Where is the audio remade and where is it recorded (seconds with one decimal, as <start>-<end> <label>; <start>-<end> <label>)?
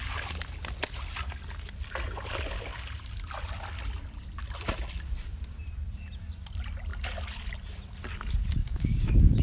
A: 0.0-8.6 recorded; 8.6-9.4 remade